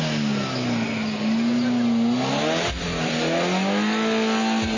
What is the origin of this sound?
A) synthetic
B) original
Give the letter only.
B